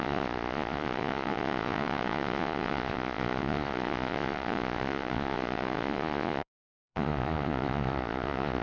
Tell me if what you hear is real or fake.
fake